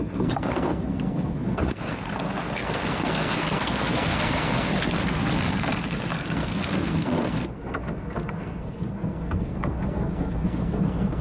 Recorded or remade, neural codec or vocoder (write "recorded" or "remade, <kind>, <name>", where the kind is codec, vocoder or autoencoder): remade, codec, SNAC